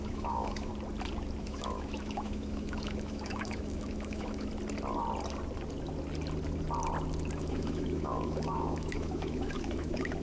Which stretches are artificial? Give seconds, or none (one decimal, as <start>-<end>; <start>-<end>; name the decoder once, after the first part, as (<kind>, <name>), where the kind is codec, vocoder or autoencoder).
0.0-0.7 (autoencoder, DAC-VAE); 1.4-4.5; 7.4-10.2